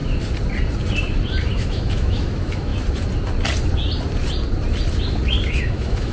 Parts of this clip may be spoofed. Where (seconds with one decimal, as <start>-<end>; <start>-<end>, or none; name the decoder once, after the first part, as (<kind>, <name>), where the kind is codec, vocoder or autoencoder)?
1.5-2.7 (autoencoder, DAC-VAE); 5.5-6.1